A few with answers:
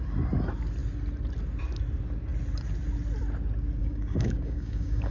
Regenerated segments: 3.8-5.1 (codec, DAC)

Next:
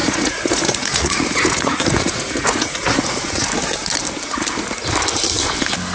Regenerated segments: 0.0-3.5 (vocoder, Vocos)